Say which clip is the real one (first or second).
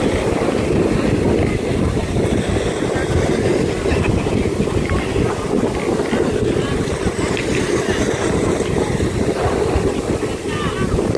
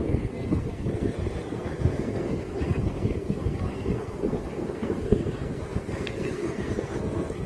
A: first